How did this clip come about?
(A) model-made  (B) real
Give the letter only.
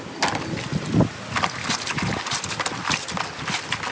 B